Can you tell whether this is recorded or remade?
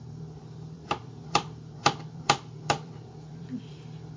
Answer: remade